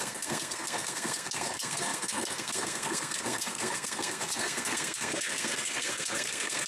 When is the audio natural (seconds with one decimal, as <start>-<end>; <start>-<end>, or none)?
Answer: none